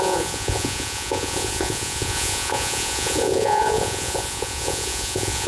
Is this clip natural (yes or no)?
no